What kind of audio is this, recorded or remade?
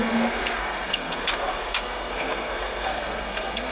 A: remade